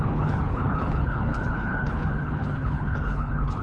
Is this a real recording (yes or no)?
no